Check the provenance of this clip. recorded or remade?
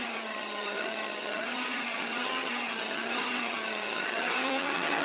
remade